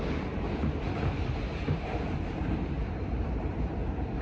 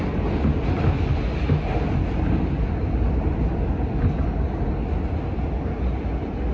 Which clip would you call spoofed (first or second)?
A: first